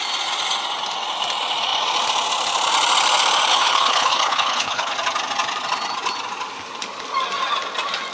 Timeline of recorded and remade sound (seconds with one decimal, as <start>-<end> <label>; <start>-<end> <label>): 0.0-3.5 recorded; 3.5-4.9 remade; 4.9-8.1 recorded